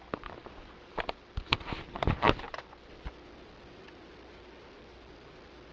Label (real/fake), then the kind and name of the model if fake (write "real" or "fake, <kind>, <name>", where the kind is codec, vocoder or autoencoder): real